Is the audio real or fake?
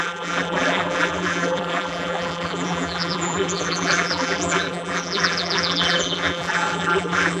fake